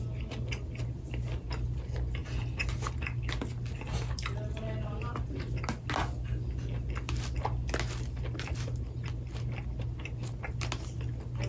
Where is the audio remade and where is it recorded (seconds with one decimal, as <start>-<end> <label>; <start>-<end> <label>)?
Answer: 0.0-11.5 recorded